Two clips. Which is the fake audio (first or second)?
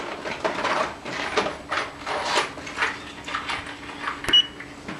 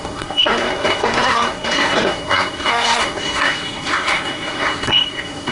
second